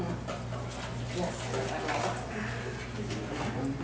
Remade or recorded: recorded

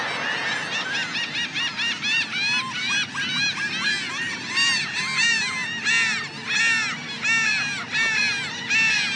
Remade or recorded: recorded